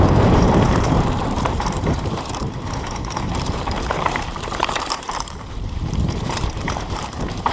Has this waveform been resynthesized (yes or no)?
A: yes